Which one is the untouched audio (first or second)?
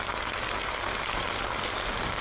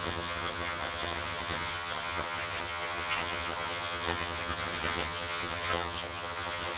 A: first